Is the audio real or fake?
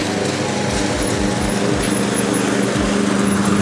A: real